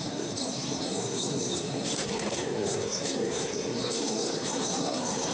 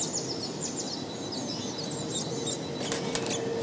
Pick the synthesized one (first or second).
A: first